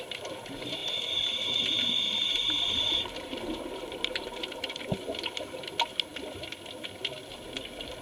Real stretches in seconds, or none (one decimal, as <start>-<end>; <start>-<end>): 0.0-0.8; 4.8-8.0